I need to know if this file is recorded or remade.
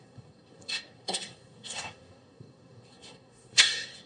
remade